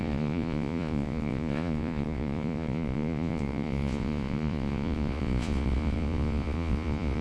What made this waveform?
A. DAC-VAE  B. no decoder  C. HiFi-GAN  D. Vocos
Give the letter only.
D